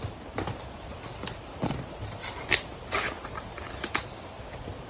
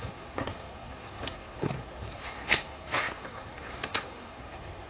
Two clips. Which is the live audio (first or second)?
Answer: first